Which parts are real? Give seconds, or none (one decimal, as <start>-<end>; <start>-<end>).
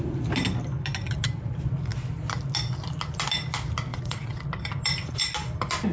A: 0.0-3.9; 4.4-5.9